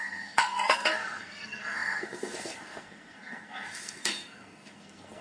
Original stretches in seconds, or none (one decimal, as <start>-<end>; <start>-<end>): none